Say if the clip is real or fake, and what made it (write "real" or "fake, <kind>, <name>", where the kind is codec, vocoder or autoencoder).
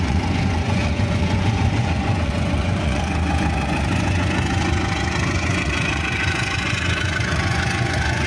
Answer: fake, vocoder, Vocos